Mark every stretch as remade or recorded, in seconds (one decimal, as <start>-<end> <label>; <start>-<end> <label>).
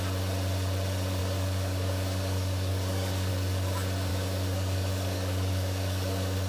0.0-1.2 recorded; 1.2-3.3 remade; 3.3-4.1 recorded; 4.1-6.5 remade